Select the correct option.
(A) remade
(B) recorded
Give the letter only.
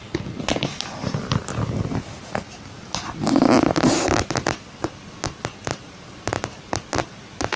B